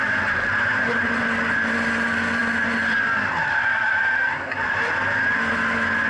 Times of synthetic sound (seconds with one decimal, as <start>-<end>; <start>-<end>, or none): none